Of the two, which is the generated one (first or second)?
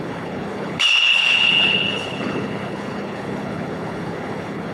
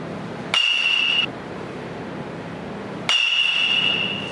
first